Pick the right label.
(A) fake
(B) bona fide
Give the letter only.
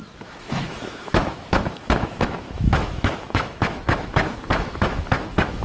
A